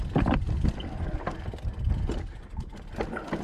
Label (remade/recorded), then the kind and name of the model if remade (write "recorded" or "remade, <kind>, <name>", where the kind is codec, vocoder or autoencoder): recorded